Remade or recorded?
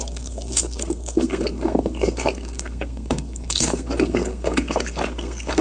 remade